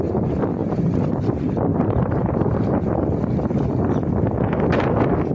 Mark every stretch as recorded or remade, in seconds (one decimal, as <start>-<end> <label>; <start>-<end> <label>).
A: 0.0-0.6 recorded; 0.6-1.1 remade; 1.1-1.7 recorded; 1.7-2.9 remade; 2.9-5.3 recorded